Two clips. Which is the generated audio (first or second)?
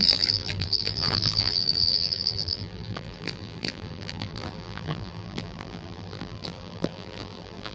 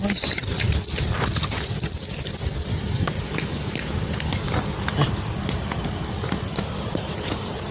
first